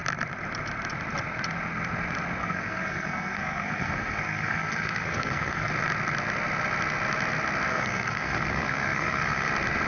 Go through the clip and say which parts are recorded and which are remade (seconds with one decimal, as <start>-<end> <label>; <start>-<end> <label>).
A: 0.0-2.4 recorded; 2.4-5.7 remade; 5.7-7.7 recorded; 7.7-9.5 remade; 9.5-9.9 recorded